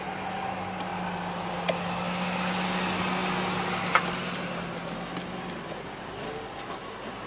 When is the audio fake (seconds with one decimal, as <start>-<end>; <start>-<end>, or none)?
none